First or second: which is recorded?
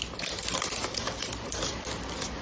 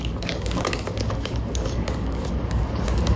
first